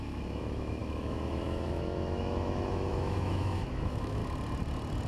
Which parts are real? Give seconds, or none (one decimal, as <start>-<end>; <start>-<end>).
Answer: 4.2-5.1